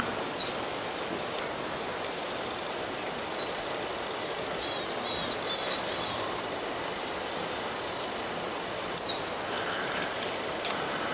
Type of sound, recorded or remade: recorded